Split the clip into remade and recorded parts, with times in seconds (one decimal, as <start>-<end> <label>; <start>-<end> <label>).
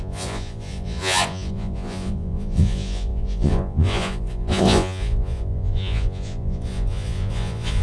0.0-7.8 remade